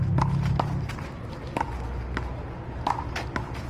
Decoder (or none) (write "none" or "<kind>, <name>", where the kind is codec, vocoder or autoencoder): none